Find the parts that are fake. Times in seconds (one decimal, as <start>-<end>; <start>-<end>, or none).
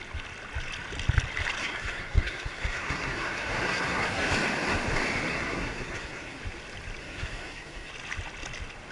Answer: 1.6-4.3; 5.3-6.4; 7.0-7.9